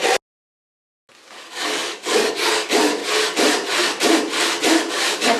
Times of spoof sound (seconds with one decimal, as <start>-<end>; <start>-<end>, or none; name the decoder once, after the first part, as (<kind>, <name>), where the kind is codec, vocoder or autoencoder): 1.4-3.0 (codec, DAC); 4.9-5.4